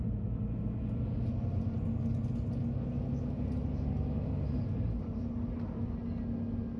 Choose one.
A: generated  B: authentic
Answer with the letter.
B